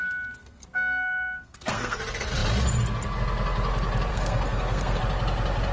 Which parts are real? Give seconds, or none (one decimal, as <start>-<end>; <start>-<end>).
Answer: 0.0-0.4; 2.0-4.1; 5.0-5.7